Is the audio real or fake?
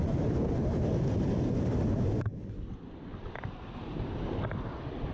real